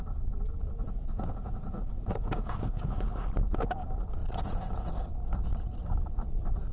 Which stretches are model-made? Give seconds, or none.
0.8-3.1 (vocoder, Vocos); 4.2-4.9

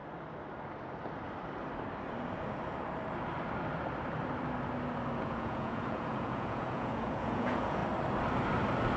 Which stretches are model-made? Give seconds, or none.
5.2-7.8 (vocoder, Vocos)